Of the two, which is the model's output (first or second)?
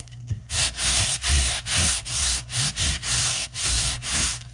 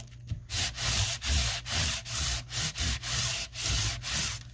first